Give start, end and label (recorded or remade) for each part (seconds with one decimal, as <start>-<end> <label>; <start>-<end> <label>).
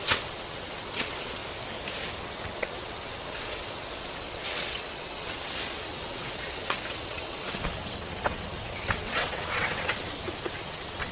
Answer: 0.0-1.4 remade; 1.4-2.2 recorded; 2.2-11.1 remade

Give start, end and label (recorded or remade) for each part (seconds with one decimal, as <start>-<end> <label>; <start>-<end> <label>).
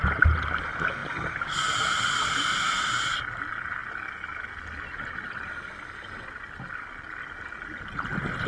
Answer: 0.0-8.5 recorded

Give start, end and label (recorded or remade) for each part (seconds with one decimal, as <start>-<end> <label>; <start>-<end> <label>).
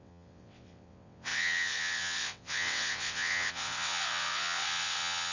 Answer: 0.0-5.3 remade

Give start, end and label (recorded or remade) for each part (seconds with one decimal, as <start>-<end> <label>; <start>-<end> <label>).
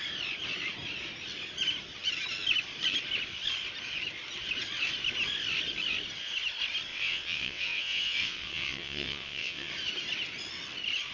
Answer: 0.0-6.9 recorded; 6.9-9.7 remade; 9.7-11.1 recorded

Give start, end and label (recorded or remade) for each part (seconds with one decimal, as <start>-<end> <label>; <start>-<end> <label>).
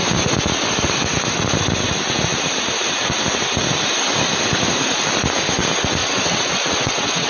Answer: 0.0-6.0 recorded; 6.0-7.3 remade